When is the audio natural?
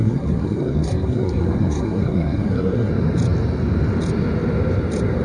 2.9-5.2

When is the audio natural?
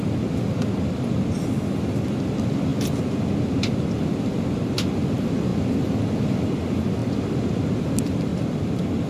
0.0-8.3